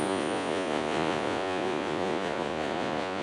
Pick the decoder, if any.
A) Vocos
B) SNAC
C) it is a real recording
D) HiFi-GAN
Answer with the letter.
A